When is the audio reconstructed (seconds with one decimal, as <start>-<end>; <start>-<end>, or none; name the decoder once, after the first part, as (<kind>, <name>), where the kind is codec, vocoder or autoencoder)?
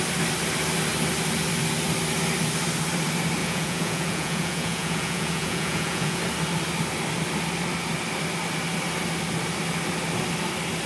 3.4-6.2 (vocoder, Vocos)